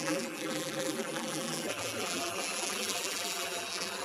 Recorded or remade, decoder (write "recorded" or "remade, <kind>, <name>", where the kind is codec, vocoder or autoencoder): remade, vocoder, BigVGAN v2